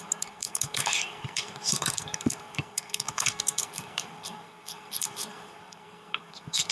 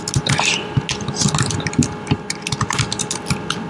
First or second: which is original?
second